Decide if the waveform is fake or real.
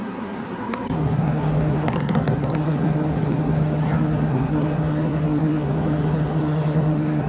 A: fake